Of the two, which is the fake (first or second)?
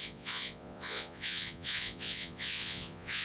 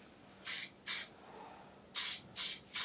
first